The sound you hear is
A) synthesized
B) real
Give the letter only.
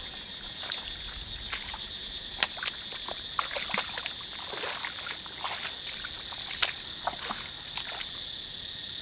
B